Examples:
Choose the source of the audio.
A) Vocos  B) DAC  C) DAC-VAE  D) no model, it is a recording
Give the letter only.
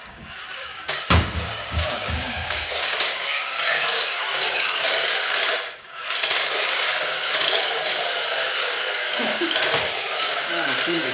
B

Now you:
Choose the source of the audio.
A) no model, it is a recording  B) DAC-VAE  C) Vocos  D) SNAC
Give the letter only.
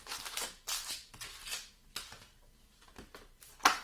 A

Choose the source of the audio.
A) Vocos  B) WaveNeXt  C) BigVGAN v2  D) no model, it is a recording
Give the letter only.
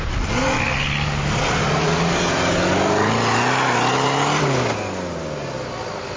D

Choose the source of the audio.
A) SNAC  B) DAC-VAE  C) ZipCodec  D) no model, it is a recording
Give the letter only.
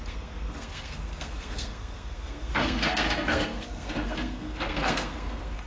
A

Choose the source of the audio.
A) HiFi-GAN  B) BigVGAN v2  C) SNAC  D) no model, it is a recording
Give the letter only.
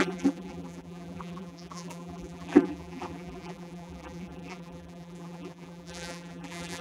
B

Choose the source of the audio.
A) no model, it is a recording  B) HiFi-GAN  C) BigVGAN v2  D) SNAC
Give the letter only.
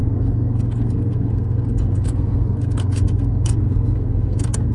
D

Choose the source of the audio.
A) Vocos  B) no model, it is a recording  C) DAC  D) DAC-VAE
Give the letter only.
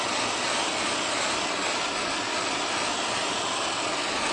B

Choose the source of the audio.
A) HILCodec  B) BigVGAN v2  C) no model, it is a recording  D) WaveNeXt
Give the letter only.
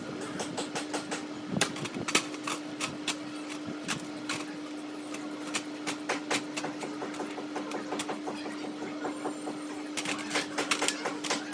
C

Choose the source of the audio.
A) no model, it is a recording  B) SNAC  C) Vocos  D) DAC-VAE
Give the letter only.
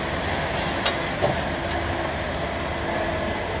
A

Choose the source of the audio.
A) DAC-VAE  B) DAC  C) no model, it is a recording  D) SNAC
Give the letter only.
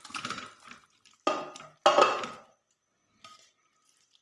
C